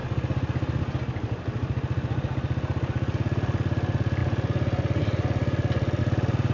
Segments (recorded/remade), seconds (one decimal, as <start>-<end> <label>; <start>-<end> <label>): 0.0-6.5 recorded